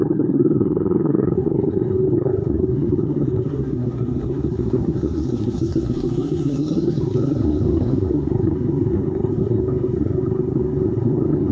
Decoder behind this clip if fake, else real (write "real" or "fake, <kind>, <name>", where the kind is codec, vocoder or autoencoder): fake, codec, SNAC